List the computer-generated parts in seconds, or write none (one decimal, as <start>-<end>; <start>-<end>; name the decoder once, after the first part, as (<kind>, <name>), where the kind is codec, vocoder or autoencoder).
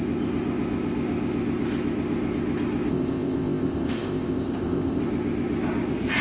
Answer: 2.9-5.0 (codec, ZipCodec)